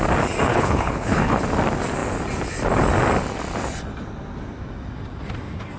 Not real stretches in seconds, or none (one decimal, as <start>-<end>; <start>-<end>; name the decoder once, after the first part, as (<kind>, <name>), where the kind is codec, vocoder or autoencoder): 0.5-1.4 (codec, HILCodec)